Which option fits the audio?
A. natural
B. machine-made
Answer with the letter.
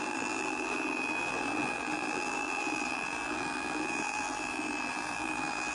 B